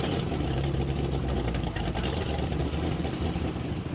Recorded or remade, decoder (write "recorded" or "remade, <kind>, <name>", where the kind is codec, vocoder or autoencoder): remade, vocoder, BigVGAN v2